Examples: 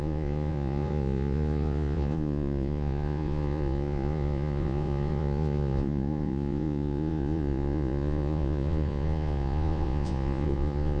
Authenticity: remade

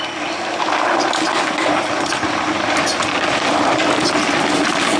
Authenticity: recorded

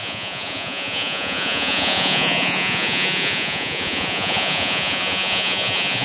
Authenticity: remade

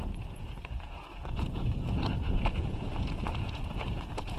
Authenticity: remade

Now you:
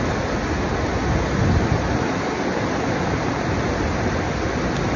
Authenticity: recorded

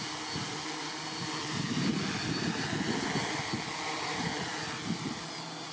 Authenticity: recorded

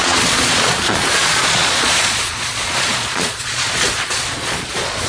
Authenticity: remade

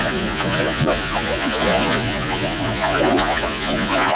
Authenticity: remade